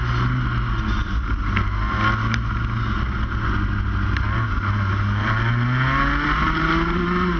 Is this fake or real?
real